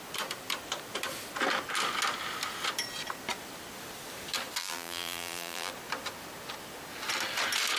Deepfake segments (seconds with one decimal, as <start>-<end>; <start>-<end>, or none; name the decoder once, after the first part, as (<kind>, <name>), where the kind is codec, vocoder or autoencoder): 4.6-5.7 (vocoder, BigVGAN v2)